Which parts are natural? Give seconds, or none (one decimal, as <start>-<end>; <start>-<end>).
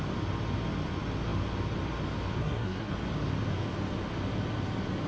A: 0.0-2.4; 2.9-5.1